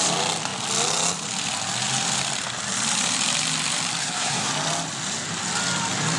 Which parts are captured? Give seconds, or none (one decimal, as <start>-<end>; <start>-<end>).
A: 0.0-4.0; 4.5-6.2